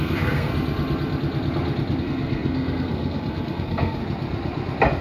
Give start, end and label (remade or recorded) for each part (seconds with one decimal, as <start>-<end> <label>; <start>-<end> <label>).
0.0-0.5 remade; 0.5-2.0 recorded; 2.0-4.0 remade; 4.0-5.0 recorded